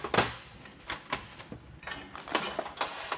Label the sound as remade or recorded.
recorded